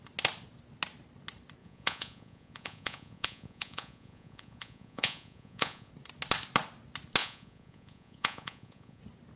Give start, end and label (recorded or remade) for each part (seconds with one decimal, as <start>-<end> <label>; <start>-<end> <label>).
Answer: 0.0-1.6 recorded; 1.6-5.9 remade; 5.9-7.2 recorded; 7.2-9.0 remade; 9.0-9.4 recorded